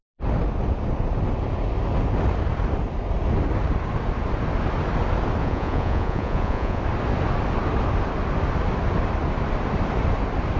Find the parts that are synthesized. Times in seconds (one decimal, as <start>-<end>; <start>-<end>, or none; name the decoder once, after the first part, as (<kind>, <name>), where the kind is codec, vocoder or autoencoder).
5.4-6.8 (vocoder, Vocos)